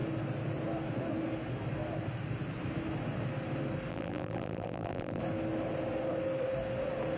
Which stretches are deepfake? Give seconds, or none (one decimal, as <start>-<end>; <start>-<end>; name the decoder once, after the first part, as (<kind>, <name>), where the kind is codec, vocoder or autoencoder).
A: 3.9-5.2 (vocoder, BigVGAN v2)